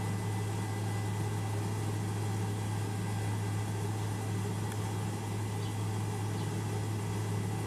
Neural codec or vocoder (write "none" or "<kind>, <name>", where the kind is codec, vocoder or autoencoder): none